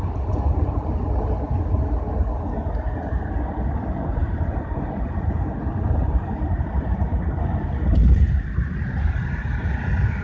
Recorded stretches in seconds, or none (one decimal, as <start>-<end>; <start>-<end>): 0.0-4.2; 7.1-10.2